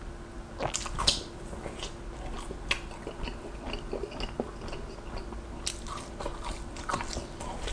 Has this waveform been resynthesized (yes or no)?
no